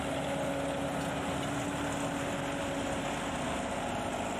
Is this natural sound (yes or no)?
yes